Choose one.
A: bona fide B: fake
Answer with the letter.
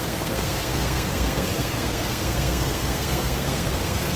B